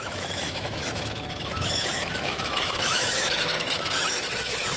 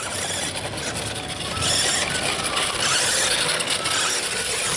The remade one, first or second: first